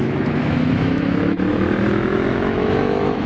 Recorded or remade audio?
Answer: remade